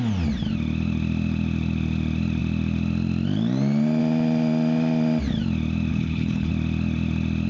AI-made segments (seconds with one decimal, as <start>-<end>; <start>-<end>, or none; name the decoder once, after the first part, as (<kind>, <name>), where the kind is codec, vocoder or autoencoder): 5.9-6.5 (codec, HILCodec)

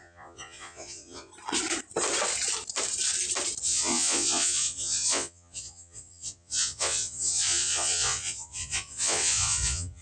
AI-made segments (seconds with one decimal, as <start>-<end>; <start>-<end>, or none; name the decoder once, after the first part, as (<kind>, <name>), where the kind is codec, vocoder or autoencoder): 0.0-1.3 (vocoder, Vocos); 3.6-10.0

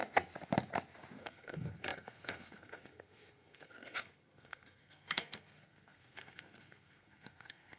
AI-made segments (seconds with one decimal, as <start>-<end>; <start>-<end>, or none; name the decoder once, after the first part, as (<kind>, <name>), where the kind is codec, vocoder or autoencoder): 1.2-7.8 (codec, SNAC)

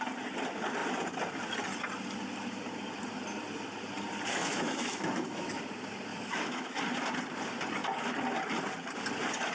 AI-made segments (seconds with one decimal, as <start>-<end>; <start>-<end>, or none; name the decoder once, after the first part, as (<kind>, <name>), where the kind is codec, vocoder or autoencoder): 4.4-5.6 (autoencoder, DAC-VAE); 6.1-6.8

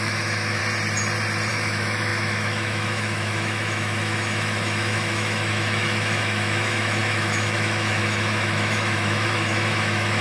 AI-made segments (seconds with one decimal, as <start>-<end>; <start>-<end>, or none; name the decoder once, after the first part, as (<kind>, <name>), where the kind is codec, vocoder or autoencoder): 0.0-0.6 (autoencoder, DAC-VAE); 1.5-10.2

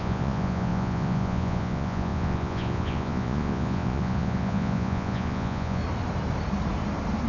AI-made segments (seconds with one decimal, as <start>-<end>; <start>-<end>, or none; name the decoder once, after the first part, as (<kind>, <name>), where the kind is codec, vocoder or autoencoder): 0.0-5.8 (vocoder, Vocos)